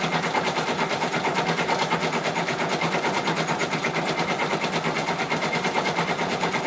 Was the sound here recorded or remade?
recorded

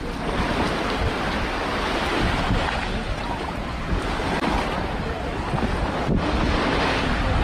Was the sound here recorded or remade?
recorded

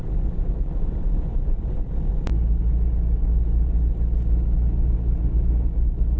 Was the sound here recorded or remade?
recorded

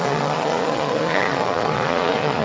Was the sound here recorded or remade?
remade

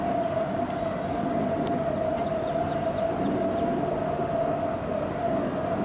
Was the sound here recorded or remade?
recorded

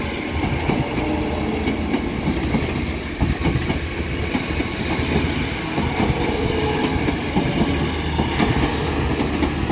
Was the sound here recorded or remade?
recorded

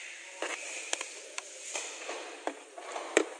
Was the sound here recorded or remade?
recorded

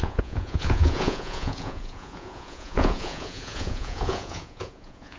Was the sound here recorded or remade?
remade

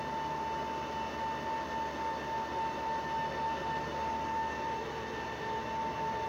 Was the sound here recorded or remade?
recorded